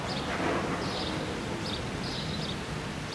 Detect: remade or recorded recorded